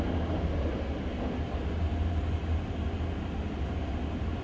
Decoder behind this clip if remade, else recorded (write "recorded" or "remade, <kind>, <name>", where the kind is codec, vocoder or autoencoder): recorded